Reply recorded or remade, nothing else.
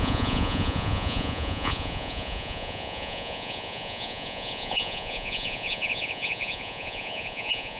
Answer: remade